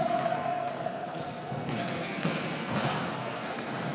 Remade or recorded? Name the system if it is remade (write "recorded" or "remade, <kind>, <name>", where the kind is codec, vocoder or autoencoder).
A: remade, codec, SNAC